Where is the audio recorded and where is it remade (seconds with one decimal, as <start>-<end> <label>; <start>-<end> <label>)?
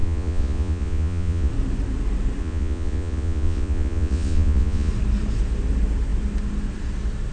0.0-1.5 remade; 1.5-2.4 recorded; 2.4-4.9 remade; 4.9-7.3 recorded